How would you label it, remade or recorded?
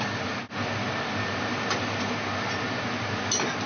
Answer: recorded